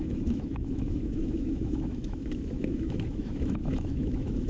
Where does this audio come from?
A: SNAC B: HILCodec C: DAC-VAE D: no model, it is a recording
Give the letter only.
C